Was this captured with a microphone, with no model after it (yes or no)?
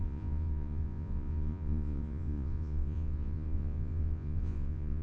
no